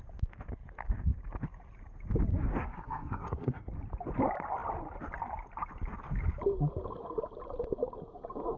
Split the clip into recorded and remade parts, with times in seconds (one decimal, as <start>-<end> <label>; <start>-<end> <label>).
0.0-2.6 recorded; 2.6-3.7 remade; 3.7-8.6 recorded